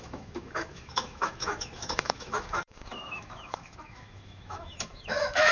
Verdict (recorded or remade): remade